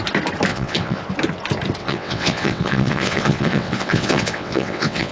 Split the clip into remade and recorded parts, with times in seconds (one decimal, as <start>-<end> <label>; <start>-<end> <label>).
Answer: 0.0-0.5 recorded; 0.5-1.0 remade; 1.0-1.8 recorded; 1.8-5.1 remade